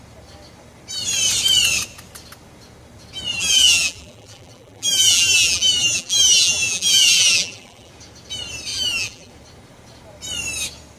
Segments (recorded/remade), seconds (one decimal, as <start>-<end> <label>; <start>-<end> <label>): 0.0-3.3 recorded; 3.3-7.9 remade; 7.9-8.7 recorded; 8.7-9.3 remade; 9.3-11.0 recorded